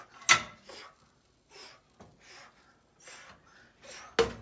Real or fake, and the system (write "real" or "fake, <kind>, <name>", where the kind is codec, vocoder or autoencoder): real